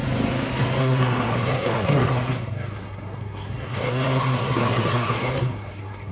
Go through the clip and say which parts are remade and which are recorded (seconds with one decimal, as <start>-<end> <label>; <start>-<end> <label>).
0.0-0.8 recorded; 0.8-6.1 remade

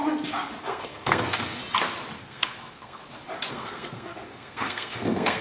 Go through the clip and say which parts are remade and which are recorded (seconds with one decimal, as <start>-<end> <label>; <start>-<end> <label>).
0.0-0.6 recorded; 0.6-1.6 remade; 1.6-2.2 recorded; 2.2-3.0 remade; 3.0-3.5 recorded; 3.5-5.4 remade

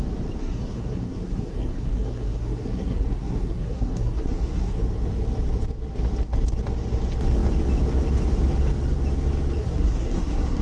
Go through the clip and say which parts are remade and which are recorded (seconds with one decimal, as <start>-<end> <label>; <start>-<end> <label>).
0.0-0.4 recorded; 0.4-4.8 remade; 4.8-9.6 recorded; 9.6-10.6 remade

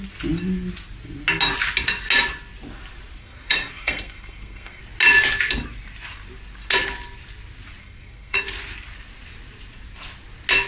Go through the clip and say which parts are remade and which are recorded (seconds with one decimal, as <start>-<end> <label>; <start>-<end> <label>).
0.0-3.2 recorded; 3.2-4.8 remade; 4.8-7.8 recorded; 7.8-8.4 remade; 8.4-10.7 recorded